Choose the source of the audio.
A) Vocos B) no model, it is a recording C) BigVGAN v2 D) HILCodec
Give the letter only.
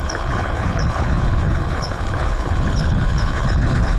D